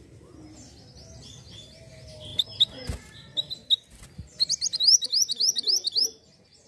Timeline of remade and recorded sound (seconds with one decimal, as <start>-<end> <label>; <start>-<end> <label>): 0.0-6.7 recorded